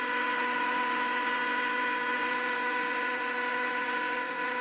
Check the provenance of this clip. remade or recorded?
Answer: remade